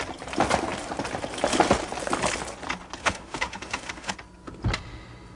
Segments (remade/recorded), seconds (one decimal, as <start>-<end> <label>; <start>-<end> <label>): 0.0-3.0 recorded; 3.0-4.1 remade; 4.1-5.4 recorded